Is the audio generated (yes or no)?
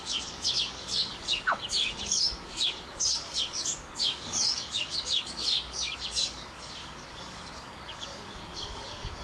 yes